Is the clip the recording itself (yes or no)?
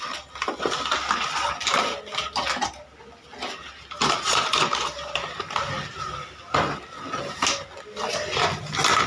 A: yes